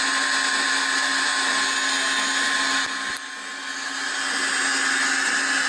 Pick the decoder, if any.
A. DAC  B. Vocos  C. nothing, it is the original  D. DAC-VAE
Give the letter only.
C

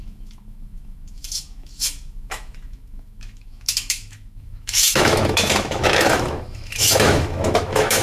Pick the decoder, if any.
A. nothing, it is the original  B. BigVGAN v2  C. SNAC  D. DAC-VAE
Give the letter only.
D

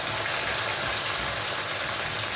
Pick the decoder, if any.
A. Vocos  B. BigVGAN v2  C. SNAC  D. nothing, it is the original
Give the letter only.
D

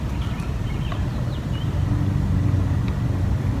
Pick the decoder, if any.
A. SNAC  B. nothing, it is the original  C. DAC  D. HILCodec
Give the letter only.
B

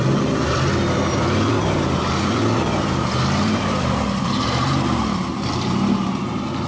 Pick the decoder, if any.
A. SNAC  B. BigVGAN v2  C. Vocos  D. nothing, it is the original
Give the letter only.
B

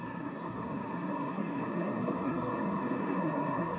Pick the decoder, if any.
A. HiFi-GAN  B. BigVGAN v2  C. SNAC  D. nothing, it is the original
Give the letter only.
C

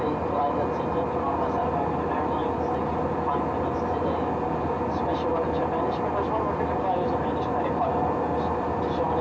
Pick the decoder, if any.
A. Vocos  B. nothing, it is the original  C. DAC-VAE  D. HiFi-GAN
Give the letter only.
B